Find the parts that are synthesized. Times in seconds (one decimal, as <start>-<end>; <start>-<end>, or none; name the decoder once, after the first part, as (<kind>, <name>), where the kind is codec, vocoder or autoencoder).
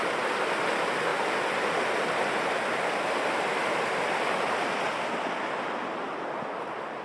none